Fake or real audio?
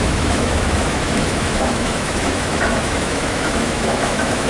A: fake